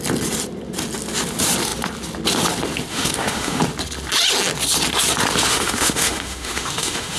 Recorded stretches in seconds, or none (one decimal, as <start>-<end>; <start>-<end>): 0.0-2.9; 3.6-5.5